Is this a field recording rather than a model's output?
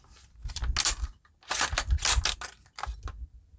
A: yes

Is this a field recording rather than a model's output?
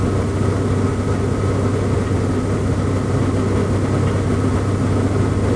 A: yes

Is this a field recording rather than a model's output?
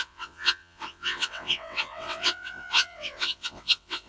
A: no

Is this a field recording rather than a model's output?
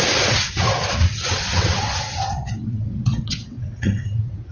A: no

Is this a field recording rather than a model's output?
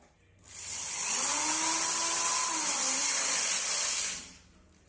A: yes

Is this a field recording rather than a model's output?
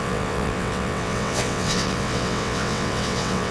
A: no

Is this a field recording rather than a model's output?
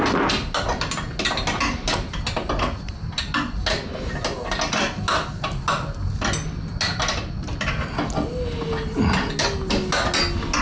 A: yes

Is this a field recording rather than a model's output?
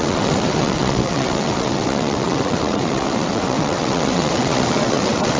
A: no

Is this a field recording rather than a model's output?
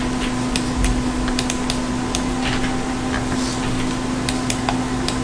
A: yes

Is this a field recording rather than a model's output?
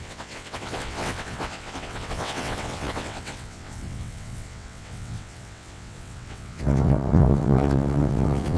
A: no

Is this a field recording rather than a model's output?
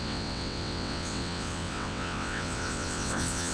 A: no